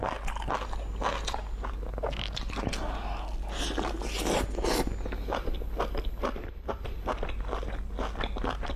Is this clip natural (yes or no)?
yes